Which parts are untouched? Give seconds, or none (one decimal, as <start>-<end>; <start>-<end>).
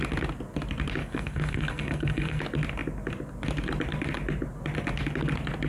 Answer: 0.0-1.0; 2.4-5.7